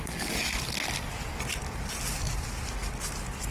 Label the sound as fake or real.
real